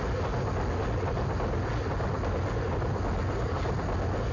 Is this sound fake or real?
real